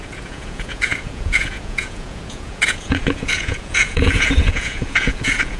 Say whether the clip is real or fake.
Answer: fake